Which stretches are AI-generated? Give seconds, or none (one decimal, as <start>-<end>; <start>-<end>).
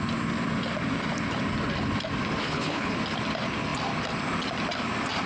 2.4-2.9